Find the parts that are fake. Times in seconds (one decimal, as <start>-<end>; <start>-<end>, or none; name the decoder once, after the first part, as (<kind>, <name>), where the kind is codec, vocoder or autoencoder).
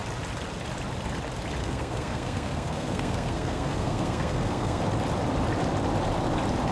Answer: 1.6-4.8 (codec, SNAC)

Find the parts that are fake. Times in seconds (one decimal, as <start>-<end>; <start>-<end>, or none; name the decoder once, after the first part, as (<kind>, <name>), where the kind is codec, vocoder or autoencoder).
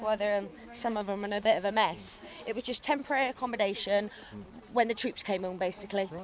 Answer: 0.5-2.6 (codec, DAC)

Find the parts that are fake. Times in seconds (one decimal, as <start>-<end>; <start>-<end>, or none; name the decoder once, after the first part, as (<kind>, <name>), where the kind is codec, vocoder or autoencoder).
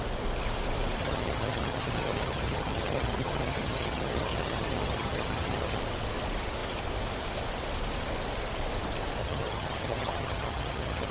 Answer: 1.0-5.8 (vocoder, HiFi-GAN); 9.2-11.1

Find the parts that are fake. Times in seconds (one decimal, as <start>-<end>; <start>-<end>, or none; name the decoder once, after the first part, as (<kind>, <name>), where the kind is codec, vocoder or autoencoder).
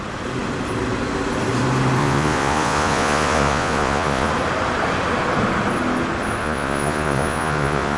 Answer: 2.0-4.3 (vocoder, Vocos); 6.4-8.0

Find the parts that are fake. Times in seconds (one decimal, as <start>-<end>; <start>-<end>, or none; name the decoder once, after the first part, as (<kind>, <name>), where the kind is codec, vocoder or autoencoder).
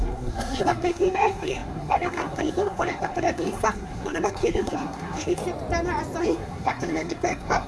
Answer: 0.0-5.4 (codec, SNAC); 6.2-7.7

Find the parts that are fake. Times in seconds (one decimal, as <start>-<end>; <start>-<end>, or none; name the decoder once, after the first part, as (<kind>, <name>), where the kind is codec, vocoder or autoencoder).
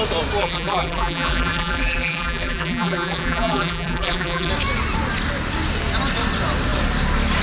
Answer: 0.4-4.5 (vocoder, BigVGAN v2)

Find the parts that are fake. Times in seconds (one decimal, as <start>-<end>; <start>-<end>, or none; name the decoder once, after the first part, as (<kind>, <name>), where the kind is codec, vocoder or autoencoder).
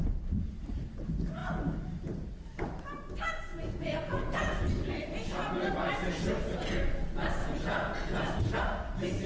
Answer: 3.5-4.6 (vocoder, Vocos); 7.4-8.4